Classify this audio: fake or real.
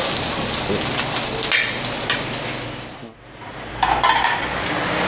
real